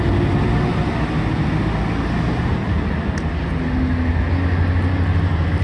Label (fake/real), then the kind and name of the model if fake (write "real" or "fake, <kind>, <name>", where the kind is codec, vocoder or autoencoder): real